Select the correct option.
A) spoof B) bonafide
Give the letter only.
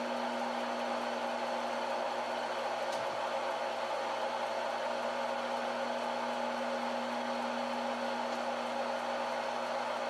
B